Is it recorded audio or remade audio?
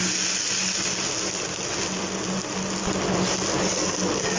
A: recorded